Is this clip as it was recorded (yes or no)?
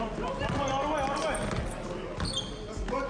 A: yes